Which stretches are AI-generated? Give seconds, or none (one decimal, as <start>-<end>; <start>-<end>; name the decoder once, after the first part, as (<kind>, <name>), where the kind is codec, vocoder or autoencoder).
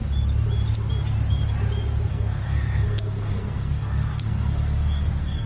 2.1-5.5 (codec, SNAC)